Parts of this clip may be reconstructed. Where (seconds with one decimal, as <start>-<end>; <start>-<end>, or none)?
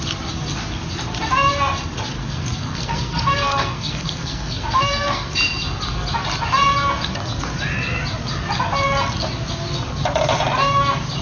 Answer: 2.2-5.3